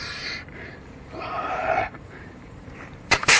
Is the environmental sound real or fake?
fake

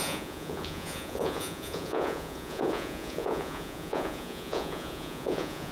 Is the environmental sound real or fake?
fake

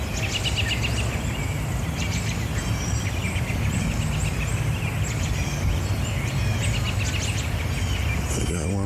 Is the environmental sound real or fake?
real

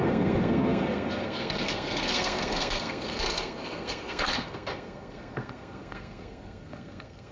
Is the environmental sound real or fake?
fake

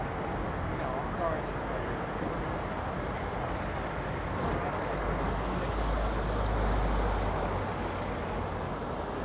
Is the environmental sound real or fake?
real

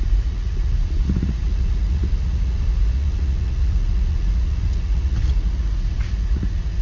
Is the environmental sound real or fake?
fake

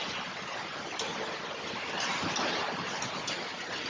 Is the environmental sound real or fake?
real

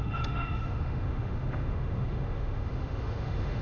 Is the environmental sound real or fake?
fake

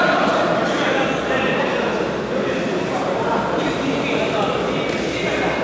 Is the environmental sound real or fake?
real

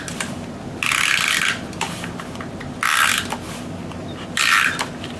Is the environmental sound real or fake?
real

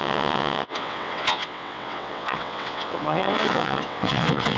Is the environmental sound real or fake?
fake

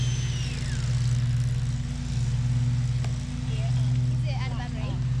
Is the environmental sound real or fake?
real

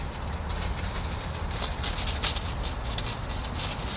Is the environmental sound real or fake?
real